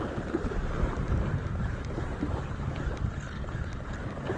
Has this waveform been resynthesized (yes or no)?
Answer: no